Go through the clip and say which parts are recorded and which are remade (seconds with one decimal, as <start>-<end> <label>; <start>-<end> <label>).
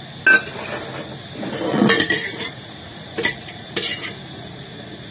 0.0-1.7 recorded; 1.7-5.1 remade